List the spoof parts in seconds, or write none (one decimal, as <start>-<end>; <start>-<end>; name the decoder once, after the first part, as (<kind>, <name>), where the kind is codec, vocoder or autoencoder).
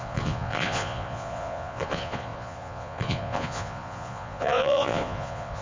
0.0-5.6 (vocoder, Vocos)